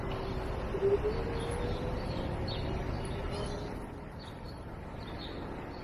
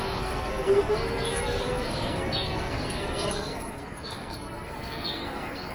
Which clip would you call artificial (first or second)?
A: second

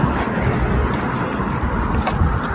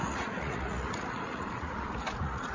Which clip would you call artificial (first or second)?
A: second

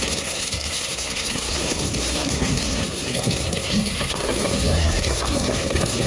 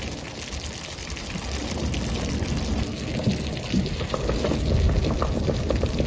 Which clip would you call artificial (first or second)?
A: first